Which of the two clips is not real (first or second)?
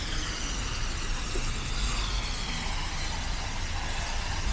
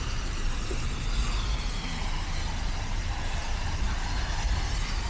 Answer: second